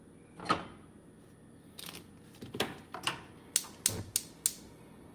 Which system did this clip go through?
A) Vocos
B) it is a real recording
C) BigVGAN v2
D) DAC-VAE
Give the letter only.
B